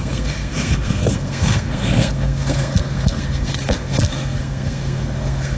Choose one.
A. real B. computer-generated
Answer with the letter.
B